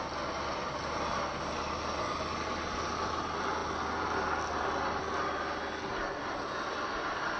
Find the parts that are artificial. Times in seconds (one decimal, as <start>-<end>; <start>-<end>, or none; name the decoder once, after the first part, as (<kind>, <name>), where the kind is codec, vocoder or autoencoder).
none